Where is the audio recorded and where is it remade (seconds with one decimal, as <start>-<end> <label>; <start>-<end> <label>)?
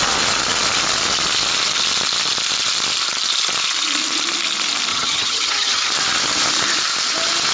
0.0-4.9 recorded; 4.9-5.9 remade; 5.9-7.5 recorded